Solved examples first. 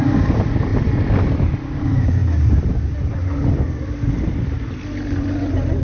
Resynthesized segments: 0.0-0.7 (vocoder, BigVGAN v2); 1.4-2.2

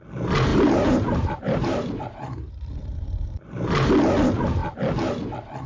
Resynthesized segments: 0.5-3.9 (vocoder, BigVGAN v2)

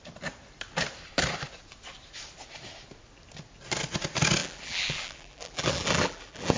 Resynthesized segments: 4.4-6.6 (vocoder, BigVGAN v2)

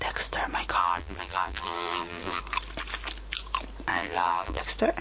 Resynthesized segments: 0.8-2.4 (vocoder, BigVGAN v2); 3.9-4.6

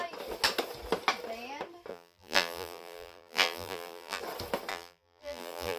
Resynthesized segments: 1.9-4.2 (vocoder, BigVGAN v2); 4.7-5.8

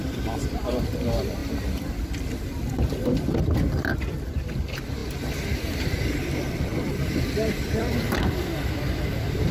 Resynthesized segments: 0.0-5.0 (vocoder, BigVGAN v2); 5.7-9.5